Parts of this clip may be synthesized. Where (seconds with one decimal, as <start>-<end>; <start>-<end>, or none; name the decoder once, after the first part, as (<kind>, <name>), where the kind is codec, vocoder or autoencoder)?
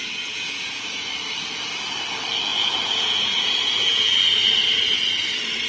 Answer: 0.0-1.1 (vocoder, Vocos); 2.5-4.1